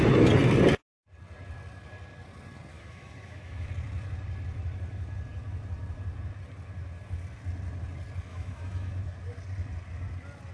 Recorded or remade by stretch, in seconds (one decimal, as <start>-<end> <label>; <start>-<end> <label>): 0.0-2.7 recorded; 2.7-3.7 remade; 3.7-8.3 recorded; 8.3-8.9 remade; 8.9-10.5 recorded